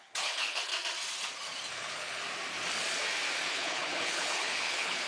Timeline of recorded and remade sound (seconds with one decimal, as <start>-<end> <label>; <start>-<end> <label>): 0.0-0.7 remade; 0.7-1.7 recorded; 1.7-2.2 remade; 2.2-3.5 recorded; 3.5-5.1 remade

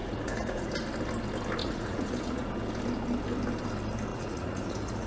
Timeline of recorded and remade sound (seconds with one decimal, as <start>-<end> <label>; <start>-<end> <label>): 0.0-0.7 remade; 0.7-1.6 recorded; 1.6-2.5 remade; 2.5-4.1 recorded; 4.1-5.1 remade

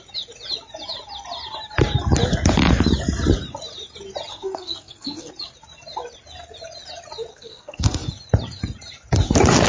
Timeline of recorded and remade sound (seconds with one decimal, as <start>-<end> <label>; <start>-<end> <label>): 0.0-4.3 recorded; 4.3-5.3 remade; 5.3-7.3 recorded; 7.3-8.1 remade; 8.1-9.7 recorded

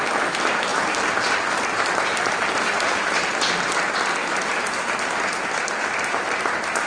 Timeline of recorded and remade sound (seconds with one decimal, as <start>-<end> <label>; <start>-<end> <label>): 0.0-0.7 recorded; 0.7-3.5 remade; 3.5-4.5 recorded; 4.5-6.9 remade

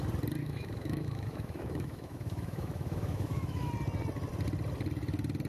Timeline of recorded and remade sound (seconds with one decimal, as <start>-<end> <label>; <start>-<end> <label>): 0.0-0.4 recorded; 0.4-3.7 remade; 3.7-5.5 recorded

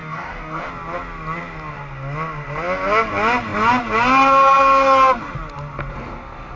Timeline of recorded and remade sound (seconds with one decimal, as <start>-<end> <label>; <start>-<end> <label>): 0.0-0.7 remade; 0.7-6.6 recorded

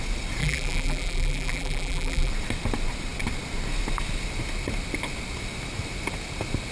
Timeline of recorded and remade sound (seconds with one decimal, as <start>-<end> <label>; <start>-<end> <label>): 0.0-0.4 recorded; 0.4-2.3 remade; 2.3-6.7 recorded

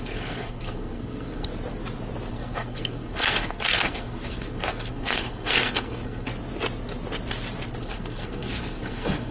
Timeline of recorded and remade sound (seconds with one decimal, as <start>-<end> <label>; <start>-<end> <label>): 0.0-1.5 remade; 1.5-2.3 recorded; 2.3-6.3 remade; 6.3-7.8 recorded; 7.8-9.3 remade